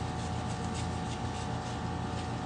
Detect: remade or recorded recorded